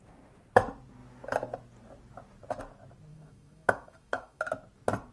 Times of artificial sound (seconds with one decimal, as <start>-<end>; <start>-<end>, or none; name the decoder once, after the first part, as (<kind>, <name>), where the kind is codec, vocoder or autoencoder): 3.1-4.4 (autoencoder, DAC-VAE)